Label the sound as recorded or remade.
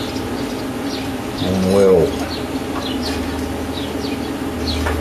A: recorded